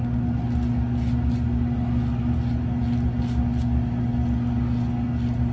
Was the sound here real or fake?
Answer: real